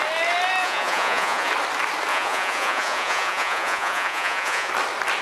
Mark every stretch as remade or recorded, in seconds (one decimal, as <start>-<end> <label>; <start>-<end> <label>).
0.0-0.6 recorded; 0.6-1.5 remade; 1.5-2.1 recorded; 2.1-4.7 remade; 4.7-5.2 recorded

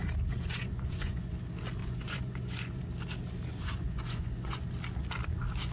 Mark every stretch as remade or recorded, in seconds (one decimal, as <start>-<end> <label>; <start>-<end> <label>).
0.0-0.5 recorded; 0.5-1.3 remade; 1.3-1.8 recorded; 1.8-2.8 remade; 2.8-3.5 recorded; 3.5-4.6 remade; 4.6-5.7 recorded

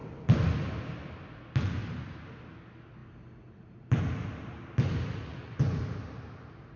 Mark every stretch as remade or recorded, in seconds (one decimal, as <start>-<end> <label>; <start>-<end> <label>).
0.0-5.3 recorded; 5.3-5.8 remade; 5.8-6.8 recorded

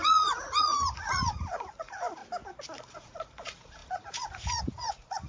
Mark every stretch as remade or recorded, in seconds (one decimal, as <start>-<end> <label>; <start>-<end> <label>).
0.0-2.2 remade; 2.2-2.8 recorded; 2.8-5.3 remade